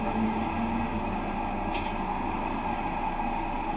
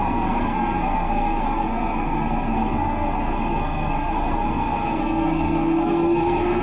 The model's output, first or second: second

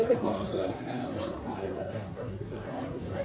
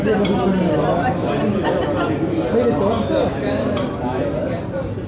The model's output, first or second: first